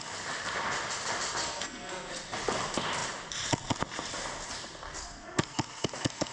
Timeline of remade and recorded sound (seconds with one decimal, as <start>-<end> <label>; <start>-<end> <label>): 0.0-1.4 recorded; 1.4-2.1 remade; 2.1-4.9 recorded; 4.9-6.3 remade